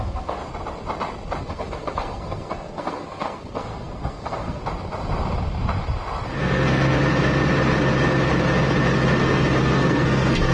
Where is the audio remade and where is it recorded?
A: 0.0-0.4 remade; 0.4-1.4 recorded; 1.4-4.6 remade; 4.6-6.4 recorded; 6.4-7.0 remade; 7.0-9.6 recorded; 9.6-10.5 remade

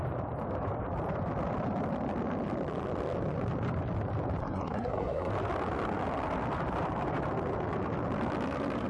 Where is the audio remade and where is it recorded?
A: 0.0-4.4 recorded; 4.4-5.3 remade; 5.3-8.9 recorded

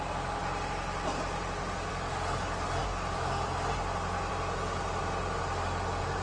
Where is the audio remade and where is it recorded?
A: 0.0-6.2 recorded

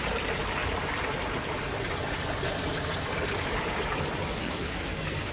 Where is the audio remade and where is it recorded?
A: 0.0-4.4 recorded; 4.4-5.3 remade